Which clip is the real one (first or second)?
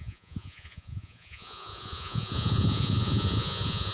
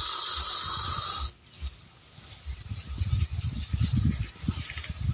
second